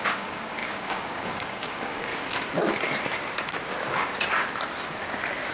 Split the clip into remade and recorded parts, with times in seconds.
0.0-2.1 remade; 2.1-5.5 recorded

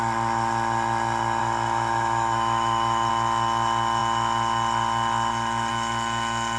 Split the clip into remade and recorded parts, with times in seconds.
0.0-1.4 recorded; 1.4-3.1 remade; 3.1-6.6 recorded

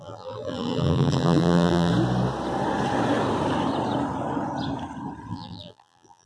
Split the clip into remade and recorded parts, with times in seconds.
0.0-1.9 remade; 1.9-5.3 recorded; 5.3-6.3 remade

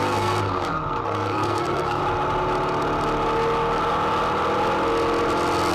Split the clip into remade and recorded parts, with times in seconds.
0.0-2.0 remade; 2.0-5.7 recorded